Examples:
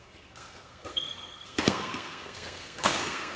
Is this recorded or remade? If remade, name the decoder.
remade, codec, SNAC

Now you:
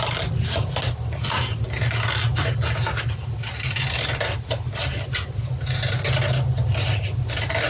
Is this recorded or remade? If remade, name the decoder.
recorded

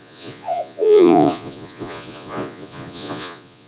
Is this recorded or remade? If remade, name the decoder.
remade, vocoder, Vocos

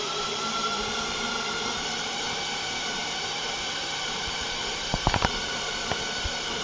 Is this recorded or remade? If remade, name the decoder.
remade, vocoder, BigVGAN v2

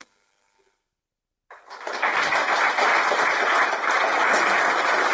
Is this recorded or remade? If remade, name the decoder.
recorded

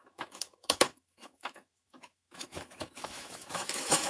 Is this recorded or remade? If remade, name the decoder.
remade, autoencoder, DAC-VAE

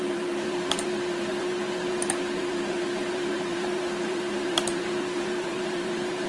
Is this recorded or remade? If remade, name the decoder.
remade, vocoder, BigVGAN v2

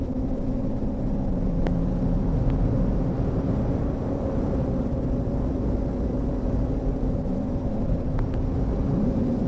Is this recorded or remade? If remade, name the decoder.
recorded